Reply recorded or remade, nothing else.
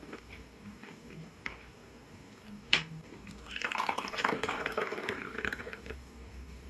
remade